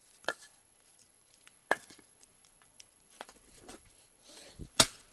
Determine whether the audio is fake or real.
fake